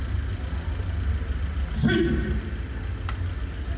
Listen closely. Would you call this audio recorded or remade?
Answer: recorded